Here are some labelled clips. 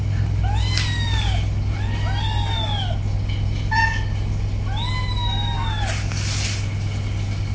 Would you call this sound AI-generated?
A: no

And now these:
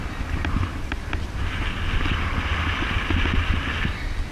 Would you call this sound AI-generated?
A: no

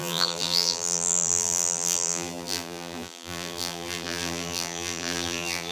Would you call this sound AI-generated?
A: yes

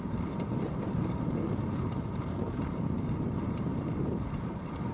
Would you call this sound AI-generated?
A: yes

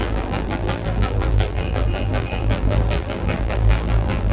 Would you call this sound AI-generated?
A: yes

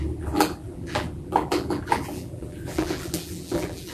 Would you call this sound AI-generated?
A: yes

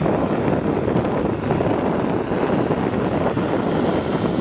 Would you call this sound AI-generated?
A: no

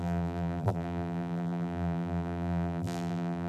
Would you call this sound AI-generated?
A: yes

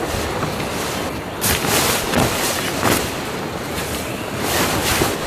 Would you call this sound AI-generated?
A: no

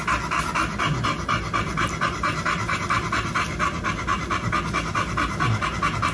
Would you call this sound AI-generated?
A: no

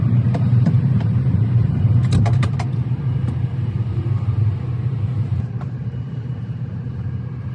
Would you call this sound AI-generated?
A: yes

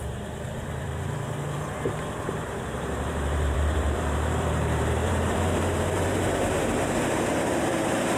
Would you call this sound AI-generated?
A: yes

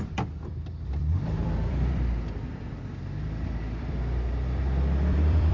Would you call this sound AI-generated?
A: yes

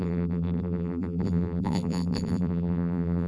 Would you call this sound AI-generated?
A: yes